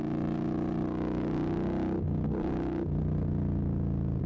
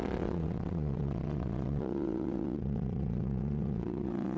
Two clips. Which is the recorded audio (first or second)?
first